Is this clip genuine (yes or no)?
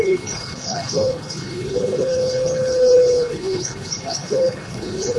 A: no